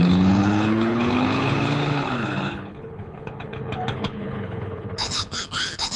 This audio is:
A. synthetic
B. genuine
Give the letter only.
A